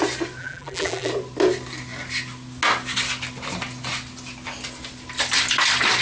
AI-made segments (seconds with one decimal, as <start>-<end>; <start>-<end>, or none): 0.4-1.1